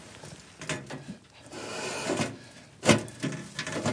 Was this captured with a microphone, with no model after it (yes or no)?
yes